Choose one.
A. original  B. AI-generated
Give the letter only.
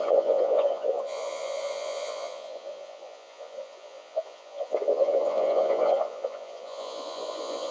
B